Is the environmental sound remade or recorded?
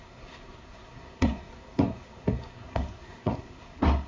remade